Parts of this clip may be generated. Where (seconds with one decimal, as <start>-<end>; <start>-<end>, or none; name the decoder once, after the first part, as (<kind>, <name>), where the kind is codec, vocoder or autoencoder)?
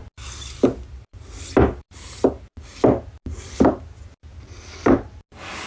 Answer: none